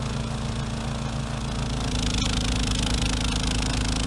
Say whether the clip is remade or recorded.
recorded